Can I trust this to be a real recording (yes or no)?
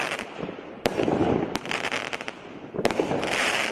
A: no